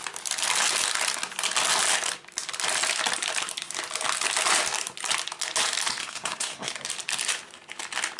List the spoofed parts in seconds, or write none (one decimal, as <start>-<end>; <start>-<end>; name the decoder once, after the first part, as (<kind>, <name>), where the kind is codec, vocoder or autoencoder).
6.0-6.7 (codec, SNAC)